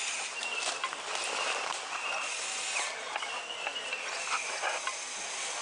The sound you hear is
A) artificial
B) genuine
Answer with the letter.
B